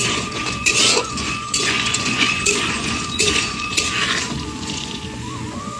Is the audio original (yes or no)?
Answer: no